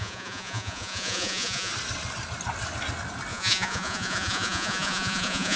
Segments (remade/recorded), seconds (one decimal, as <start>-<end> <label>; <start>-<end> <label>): 0.0-1.7 remade; 1.7-3.3 recorded; 3.3-5.6 remade